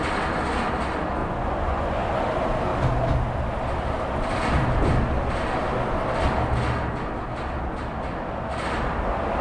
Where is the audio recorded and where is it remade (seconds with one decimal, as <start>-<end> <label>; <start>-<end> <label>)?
0.0-1.2 recorded; 1.2-2.1 remade; 2.1-9.4 recorded